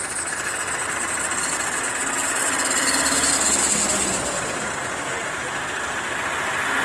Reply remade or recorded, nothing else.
recorded